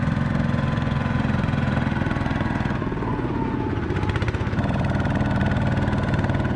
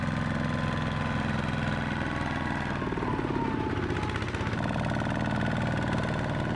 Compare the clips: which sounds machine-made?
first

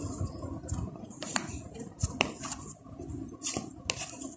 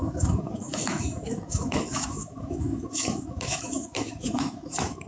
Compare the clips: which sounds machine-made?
second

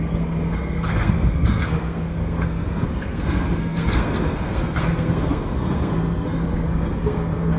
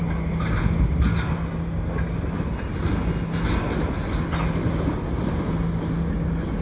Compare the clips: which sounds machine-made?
first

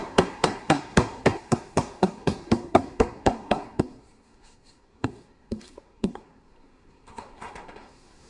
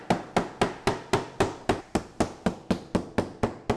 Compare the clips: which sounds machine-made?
first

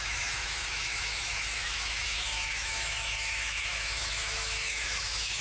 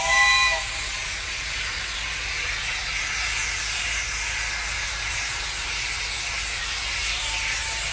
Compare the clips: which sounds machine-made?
first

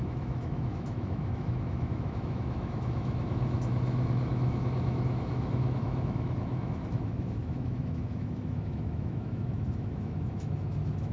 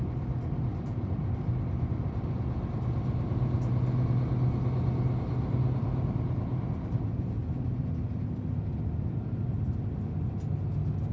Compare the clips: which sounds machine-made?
first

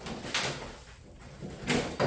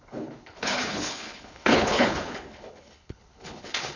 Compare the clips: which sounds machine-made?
second